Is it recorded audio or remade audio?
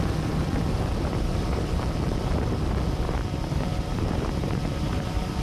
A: remade